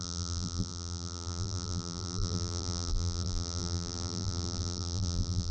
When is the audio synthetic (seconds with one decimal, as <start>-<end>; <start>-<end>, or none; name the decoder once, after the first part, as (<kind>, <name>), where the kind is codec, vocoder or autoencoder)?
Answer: 0.0-5.5 (vocoder, BigVGAN v2)